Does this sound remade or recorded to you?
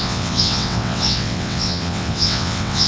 remade